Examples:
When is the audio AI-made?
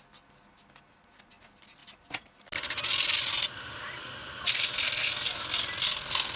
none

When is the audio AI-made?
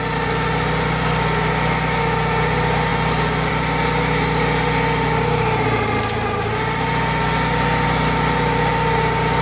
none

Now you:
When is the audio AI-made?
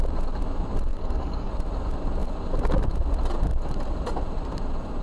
0.9-1.5 (codec, DAC)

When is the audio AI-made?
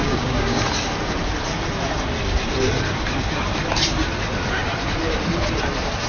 0.0-0.6 (codec, DAC)